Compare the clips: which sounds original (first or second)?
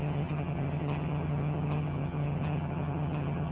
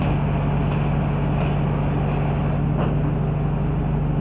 second